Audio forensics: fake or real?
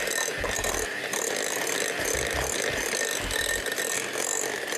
real